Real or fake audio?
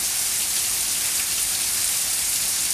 real